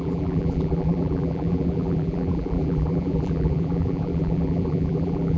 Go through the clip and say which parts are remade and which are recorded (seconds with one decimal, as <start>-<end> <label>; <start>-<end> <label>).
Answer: 0.0-5.4 remade